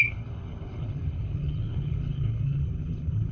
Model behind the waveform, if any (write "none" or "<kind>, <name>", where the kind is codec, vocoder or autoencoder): codec, HILCodec